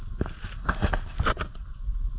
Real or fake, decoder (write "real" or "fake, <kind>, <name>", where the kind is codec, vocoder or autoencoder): real